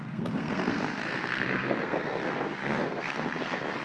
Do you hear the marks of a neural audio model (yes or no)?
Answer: yes